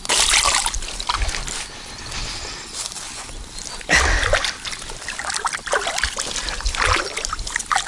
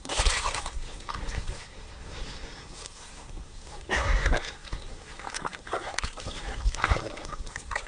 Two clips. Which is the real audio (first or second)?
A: first